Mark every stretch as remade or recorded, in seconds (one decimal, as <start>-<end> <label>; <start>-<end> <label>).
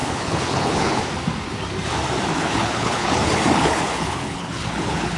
0.0-1.0 remade; 1.0-2.3 recorded; 2.3-5.2 remade